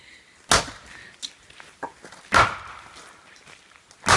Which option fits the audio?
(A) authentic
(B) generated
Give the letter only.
A